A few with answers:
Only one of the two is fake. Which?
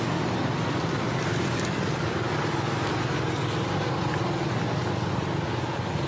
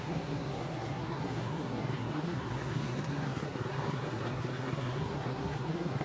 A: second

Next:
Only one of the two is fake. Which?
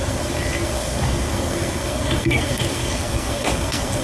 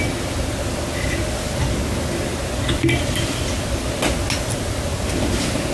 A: first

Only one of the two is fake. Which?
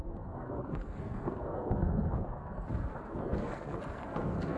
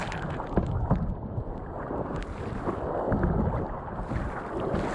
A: first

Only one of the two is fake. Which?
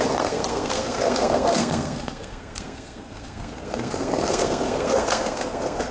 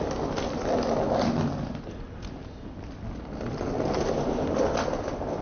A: first